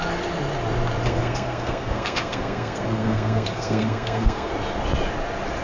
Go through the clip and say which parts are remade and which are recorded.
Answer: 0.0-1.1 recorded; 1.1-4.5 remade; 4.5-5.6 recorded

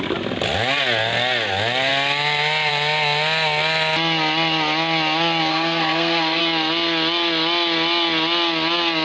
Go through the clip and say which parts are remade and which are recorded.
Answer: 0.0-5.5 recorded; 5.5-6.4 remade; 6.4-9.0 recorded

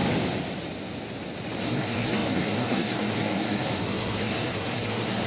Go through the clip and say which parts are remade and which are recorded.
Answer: 0.0-1.7 recorded; 1.7-5.3 remade